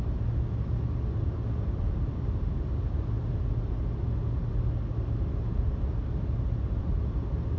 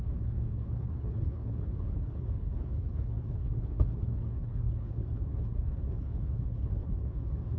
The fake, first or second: second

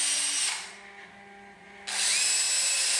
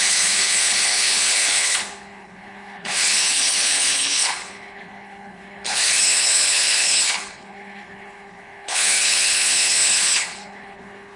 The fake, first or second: second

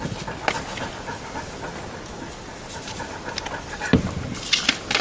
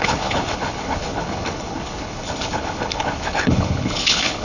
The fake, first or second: second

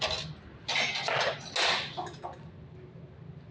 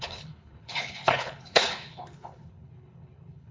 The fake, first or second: second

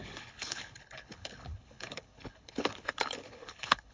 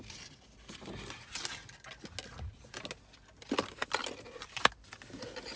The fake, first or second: first